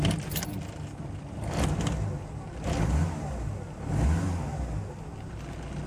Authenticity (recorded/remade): recorded